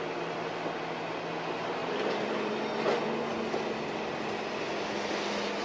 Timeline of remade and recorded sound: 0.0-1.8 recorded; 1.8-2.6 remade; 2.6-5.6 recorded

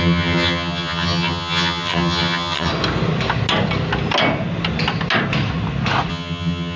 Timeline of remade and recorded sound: 0.0-2.7 remade; 2.7-6.1 recorded; 6.1-6.8 remade

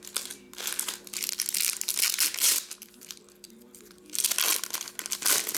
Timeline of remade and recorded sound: 0.0-2.8 recorded; 2.8-4.0 remade; 4.0-5.6 recorded